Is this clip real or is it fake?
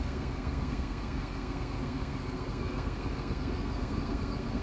fake